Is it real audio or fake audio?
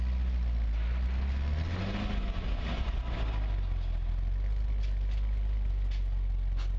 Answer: real